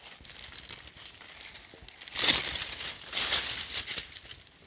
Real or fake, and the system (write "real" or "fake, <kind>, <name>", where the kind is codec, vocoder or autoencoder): real